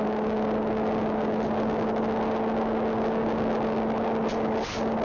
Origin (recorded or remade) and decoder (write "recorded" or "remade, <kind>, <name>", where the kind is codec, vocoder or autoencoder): recorded